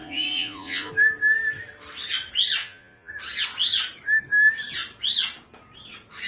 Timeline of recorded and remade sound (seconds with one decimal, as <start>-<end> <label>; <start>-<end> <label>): 0.0-0.9 remade; 0.9-2.6 recorded; 2.6-3.1 remade; 3.1-6.3 recorded